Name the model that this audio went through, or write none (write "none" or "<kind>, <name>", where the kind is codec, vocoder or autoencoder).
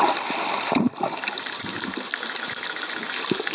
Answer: none